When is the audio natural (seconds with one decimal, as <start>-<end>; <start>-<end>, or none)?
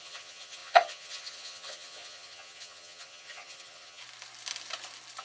4.0-5.2